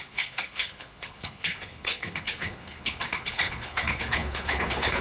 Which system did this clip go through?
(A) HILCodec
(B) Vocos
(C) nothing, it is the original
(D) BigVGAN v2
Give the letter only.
A